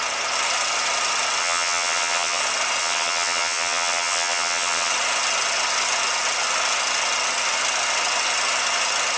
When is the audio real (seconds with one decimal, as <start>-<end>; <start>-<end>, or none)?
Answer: 0.0-1.4; 2.4-2.8; 4.9-9.2

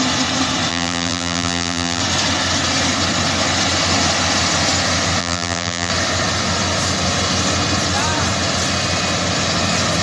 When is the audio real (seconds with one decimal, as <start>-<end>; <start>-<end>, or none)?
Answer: 0.0-0.7; 2.0-5.2; 5.9-10.0

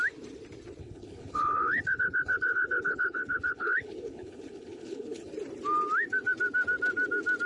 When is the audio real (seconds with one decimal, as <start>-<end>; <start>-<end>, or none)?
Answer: 0.0-0.8; 5.3-7.5

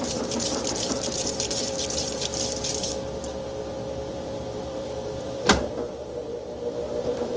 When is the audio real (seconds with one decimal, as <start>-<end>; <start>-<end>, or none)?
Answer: 2.3-4.1; 6.3-7.0